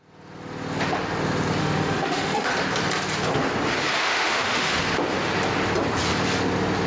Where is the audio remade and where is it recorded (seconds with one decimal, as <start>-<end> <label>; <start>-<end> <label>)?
0.0-1.6 recorded; 1.6-2.5 remade; 2.5-4.0 recorded; 4.0-4.8 remade; 4.8-6.9 recorded